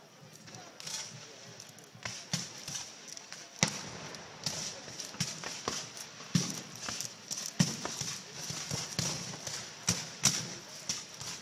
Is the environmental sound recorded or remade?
recorded